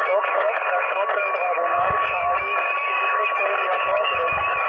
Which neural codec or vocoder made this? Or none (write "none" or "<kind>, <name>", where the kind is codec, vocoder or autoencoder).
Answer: codec, DAC